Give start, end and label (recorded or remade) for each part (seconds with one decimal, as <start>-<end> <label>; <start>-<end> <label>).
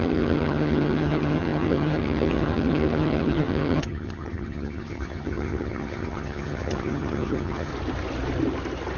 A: 0.0-7.7 remade; 7.7-9.0 recorded